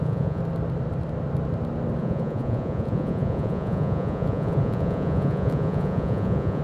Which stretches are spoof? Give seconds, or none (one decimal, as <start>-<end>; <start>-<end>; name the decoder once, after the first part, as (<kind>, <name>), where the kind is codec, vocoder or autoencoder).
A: 0.0-0.4 (vocoder, Vocos); 2.0-6.6